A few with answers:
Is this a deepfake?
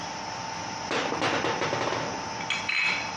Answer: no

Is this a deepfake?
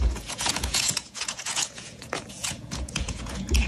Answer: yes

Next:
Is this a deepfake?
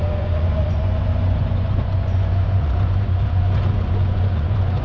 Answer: yes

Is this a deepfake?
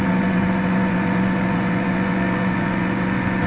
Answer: yes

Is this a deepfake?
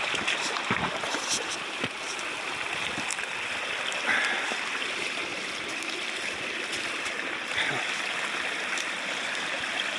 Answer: no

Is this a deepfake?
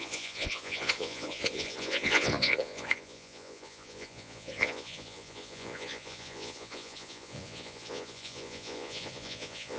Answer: yes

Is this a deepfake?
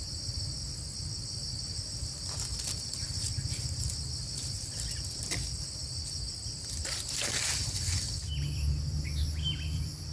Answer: no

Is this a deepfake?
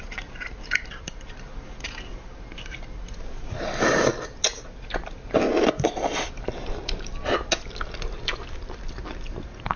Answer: no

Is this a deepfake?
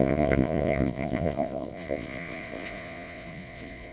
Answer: yes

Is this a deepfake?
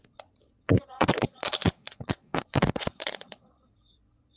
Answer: yes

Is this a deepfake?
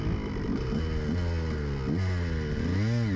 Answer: no